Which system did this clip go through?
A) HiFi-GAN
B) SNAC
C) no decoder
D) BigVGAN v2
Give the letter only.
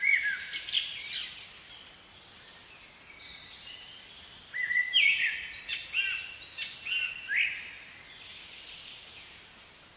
C